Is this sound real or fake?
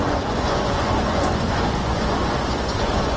fake